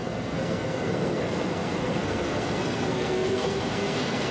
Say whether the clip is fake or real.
fake